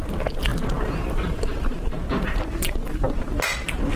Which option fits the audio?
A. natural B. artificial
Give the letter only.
A